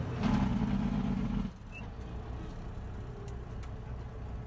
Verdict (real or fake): real